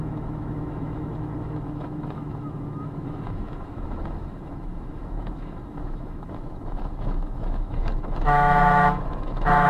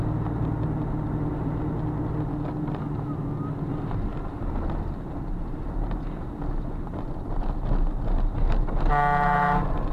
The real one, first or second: second